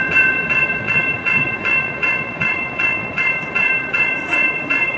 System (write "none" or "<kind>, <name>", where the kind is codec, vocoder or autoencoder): vocoder, Vocos